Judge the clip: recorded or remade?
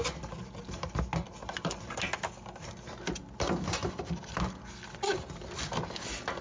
recorded